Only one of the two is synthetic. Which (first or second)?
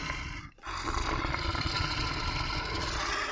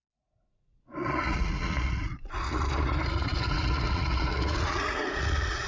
second